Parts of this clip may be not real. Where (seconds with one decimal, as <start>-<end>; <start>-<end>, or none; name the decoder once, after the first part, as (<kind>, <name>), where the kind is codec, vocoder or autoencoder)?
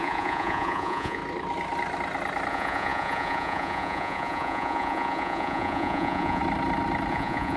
0.0-1.2 (vocoder, Vocos); 2.5-6.4; 7.1-7.6